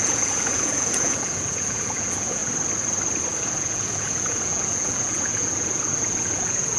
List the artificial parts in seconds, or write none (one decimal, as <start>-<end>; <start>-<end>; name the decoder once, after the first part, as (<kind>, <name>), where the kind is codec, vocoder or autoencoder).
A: 0.0-2.4 (vocoder, Vocos); 3.4-6.8